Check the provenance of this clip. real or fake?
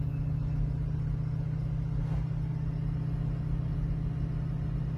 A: real